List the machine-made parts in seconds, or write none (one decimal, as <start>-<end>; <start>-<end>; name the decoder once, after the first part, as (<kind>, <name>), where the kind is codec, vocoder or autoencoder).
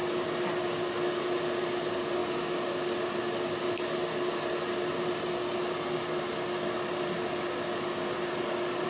none